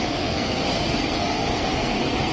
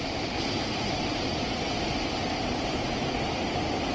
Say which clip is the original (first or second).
second